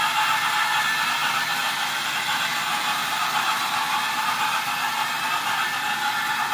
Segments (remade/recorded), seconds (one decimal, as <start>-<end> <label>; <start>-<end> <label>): 0.0-2.5 recorded; 2.5-4.4 remade; 4.4-6.5 recorded